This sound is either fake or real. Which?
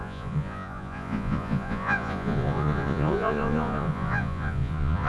fake